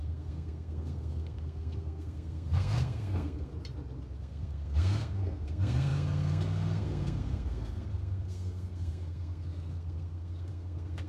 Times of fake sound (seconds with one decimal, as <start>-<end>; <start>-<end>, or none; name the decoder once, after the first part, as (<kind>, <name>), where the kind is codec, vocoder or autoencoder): 0.0-3.5 (codec, SNAC); 4.2-11.1